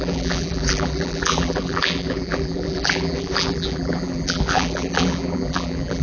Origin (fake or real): fake